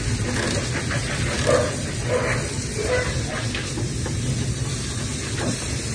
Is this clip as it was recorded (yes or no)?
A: yes